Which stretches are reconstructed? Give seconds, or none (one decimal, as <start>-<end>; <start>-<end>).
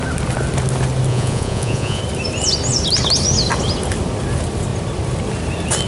1.1-2.0